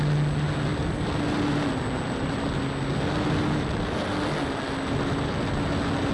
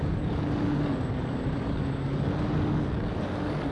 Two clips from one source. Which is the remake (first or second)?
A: second